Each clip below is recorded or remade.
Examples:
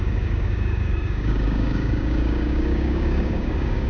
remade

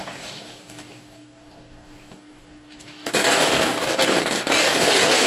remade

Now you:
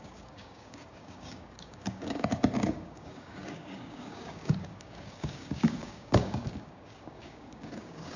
remade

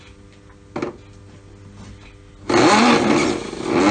recorded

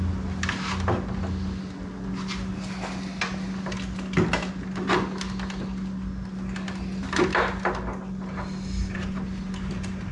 recorded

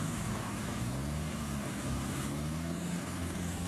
remade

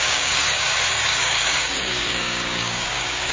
remade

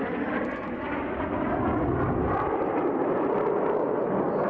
recorded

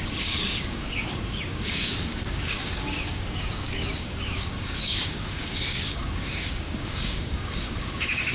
remade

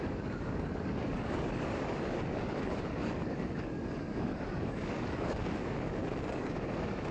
remade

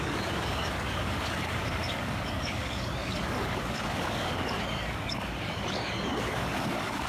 remade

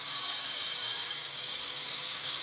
remade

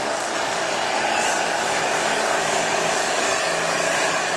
remade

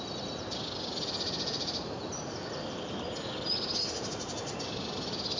recorded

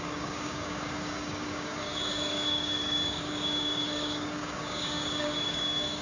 remade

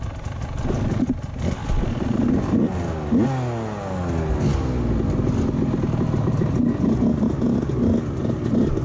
recorded